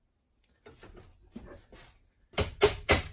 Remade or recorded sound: recorded